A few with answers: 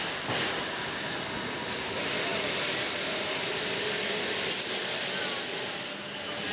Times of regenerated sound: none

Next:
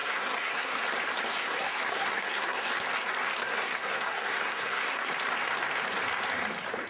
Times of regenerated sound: 0.0-0.8; 1.3-2.7; 3.4-5.1

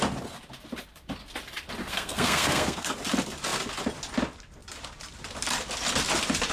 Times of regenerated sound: 1.8-2.9

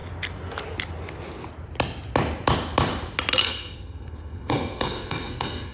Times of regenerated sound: 3.4-5.7

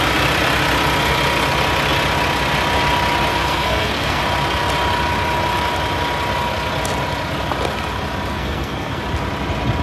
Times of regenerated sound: 3.3-4.2; 8.3-9.0

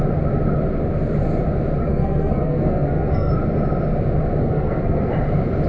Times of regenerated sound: 1.8-3.3; 4.4-5.1

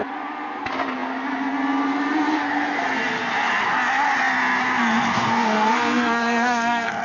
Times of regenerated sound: 5.1-7.0

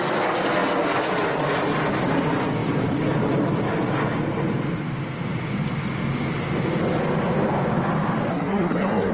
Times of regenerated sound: 8.3-9.1